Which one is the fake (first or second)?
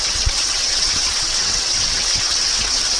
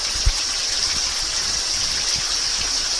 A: first